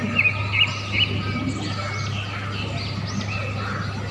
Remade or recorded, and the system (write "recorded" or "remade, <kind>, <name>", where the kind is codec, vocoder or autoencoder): recorded